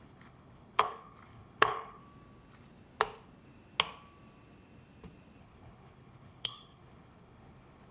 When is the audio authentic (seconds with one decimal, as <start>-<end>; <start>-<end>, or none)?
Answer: 2.0-5.4